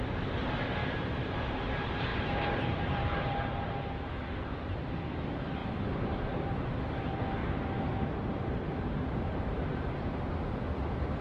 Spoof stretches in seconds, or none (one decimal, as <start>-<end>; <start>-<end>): 2.1-3.7; 5.6-6.7; 7.4-10.1